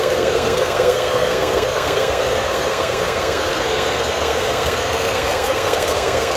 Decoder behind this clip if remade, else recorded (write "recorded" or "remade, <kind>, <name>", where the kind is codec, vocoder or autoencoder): remade, codec, SNAC